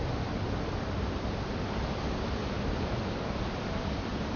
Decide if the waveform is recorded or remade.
recorded